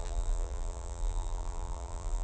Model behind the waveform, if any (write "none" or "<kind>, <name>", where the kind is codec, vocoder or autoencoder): vocoder, BigVGAN v2